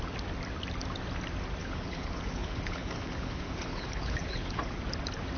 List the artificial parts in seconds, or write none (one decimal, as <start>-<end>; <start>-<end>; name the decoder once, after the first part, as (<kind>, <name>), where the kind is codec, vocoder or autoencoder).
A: 1.6-4.8 (codec, HILCodec)